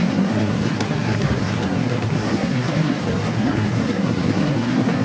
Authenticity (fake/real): fake